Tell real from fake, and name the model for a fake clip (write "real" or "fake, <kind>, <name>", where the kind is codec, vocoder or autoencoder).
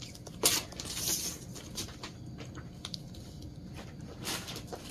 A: real